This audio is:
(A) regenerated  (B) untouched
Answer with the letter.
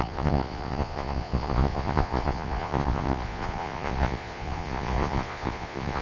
A